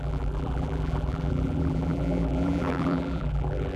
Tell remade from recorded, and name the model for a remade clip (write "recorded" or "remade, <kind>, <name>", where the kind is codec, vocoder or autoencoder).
remade, vocoder, BigVGAN v2